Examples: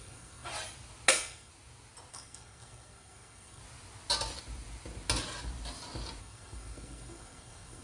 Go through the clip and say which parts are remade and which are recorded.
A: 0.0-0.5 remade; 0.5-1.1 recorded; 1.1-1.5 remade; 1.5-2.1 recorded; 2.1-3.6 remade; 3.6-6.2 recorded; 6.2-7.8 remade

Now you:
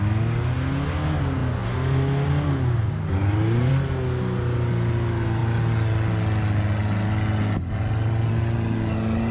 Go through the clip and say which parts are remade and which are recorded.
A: 0.0-9.3 recorded

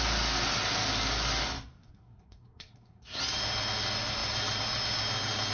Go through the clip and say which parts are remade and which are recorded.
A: 0.0-1.8 recorded; 1.8-3.2 remade; 3.2-5.5 recorded

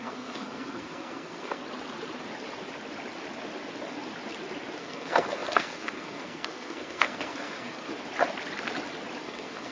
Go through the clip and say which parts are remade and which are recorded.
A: 0.0-1.6 remade; 1.6-4.8 recorded; 4.8-7.9 remade; 7.9-9.2 recorded; 9.2-9.7 remade